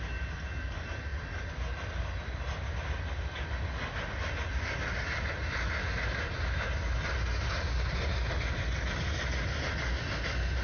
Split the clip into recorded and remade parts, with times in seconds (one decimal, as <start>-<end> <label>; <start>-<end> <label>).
0.0-10.6 recorded